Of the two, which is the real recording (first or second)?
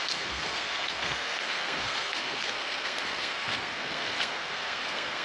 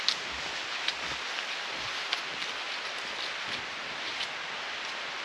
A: second